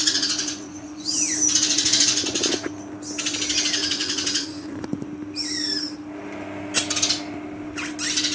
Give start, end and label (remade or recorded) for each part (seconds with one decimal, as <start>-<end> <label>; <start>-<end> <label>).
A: 0.0-2.5 remade; 2.5-3.8 recorded; 3.8-5.1 remade; 5.1-8.3 recorded